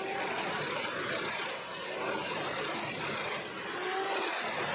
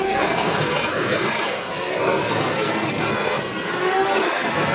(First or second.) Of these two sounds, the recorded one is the first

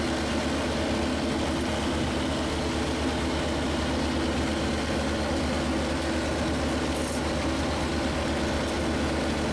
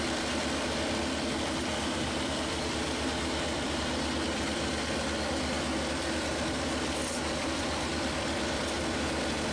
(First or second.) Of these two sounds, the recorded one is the first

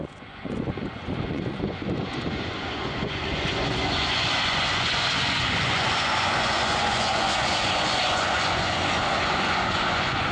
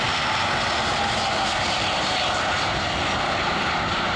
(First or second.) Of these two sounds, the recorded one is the second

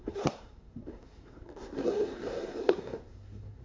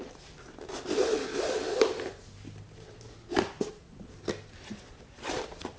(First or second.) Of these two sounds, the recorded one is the second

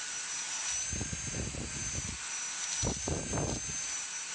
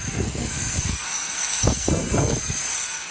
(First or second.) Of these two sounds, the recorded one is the first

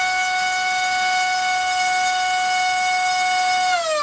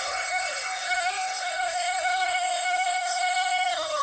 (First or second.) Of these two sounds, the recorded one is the first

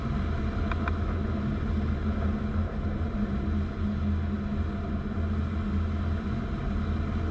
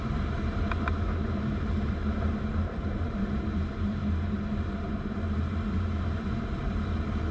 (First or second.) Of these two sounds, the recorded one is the first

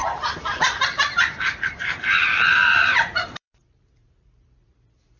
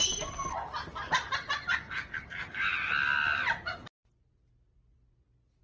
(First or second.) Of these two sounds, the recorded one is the second